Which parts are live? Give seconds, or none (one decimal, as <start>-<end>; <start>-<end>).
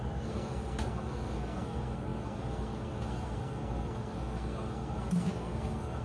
none